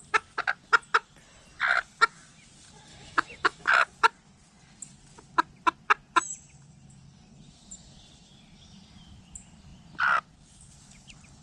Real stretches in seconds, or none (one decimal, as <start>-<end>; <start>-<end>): 0.0-2.9; 3.7-11.4